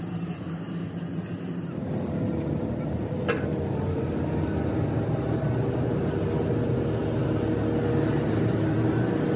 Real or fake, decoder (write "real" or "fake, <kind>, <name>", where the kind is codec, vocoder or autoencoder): real